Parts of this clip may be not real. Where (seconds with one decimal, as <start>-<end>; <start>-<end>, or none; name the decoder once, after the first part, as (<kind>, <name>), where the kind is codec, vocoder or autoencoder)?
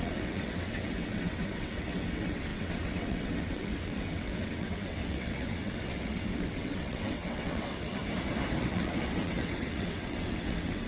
0.0-8.0 (vocoder, WaveNeXt); 8.6-10.9